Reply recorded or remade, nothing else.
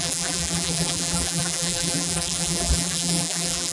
remade